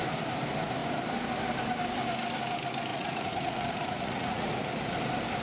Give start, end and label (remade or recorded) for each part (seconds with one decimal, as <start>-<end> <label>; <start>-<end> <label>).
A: 0.0-2.9 recorded; 2.9-4.5 remade; 4.5-5.4 recorded